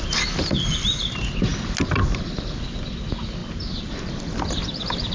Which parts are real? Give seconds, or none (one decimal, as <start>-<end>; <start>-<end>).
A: 0.0-5.1